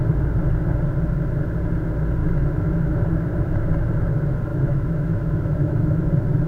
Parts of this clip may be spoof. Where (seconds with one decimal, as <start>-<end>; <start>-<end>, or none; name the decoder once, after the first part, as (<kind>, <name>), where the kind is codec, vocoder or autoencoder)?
2.2-3.7 (autoencoder, DAC-VAE); 4.5-6.0